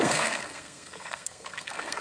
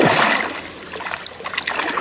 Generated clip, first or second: first